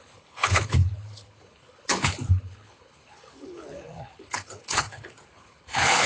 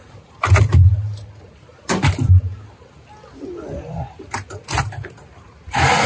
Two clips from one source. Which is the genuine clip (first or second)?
second